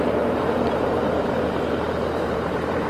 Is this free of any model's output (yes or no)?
no